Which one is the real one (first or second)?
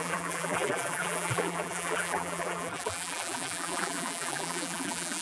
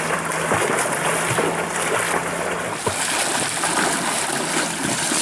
second